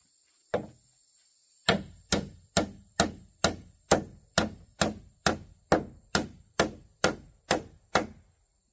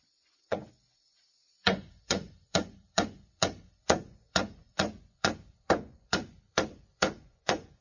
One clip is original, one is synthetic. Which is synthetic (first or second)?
second